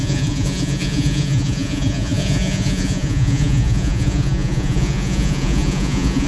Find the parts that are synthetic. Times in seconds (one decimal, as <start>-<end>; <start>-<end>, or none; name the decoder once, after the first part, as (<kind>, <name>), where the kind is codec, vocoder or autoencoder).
0.0-6.3 (vocoder, Vocos)